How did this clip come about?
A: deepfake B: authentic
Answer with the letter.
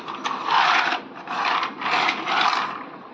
B